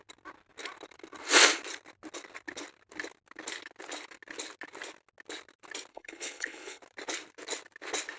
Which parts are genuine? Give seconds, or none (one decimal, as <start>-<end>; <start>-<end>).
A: 0.0-5.9; 6.8-8.2